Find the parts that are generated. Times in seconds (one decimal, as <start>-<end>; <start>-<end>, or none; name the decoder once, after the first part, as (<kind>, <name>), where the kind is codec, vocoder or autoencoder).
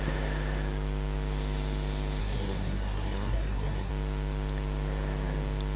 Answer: 2.2-3.9 (codec, SNAC)